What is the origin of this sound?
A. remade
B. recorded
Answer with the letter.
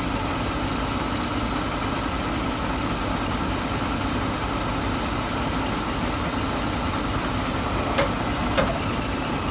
B